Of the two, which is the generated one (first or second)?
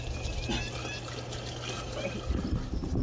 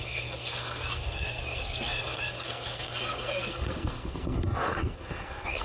second